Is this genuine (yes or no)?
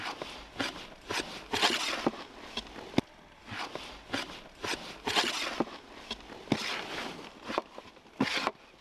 yes